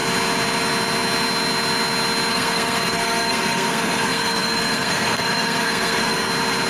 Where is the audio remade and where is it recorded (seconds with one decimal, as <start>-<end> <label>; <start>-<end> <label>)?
0.0-2.3 recorded; 2.3-6.3 remade; 6.3-6.7 recorded